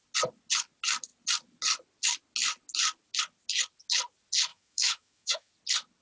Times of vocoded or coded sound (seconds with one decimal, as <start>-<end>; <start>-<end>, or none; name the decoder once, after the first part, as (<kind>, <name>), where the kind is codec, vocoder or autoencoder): 4.5-5.5 (autoencoder, DAC-VAE)